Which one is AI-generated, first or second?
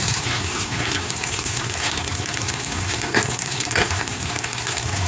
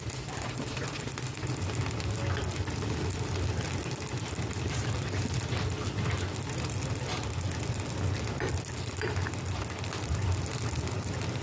first